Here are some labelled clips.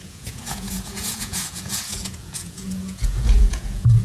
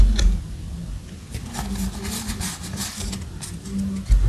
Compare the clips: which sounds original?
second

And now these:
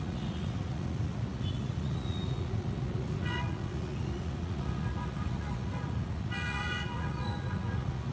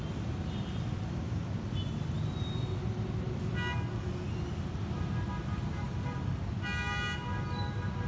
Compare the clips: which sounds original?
second